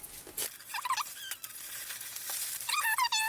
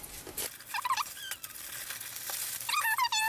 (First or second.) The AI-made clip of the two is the second